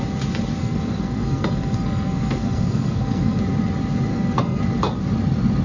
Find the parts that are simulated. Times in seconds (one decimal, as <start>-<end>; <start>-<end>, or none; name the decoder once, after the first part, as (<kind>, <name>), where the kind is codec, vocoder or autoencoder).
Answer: 0.6-3.4 (codec, SNAC); 4.1-4.6